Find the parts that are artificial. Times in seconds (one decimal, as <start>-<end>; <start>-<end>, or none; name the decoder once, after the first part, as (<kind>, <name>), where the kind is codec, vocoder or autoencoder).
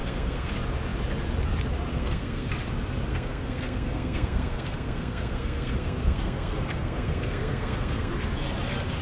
0.0-0.5 (codec, SNAC); 1.9-2.5; 3.1-8.1